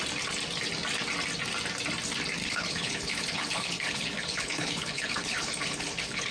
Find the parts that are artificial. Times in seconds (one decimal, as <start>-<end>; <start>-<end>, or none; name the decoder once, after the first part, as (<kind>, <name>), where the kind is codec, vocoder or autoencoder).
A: 2.4-6.3 (codec, HILCodec)